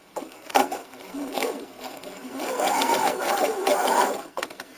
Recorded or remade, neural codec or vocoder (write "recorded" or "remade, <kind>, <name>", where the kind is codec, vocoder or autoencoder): remade, codec, SNAC